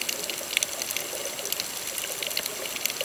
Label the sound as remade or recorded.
recorded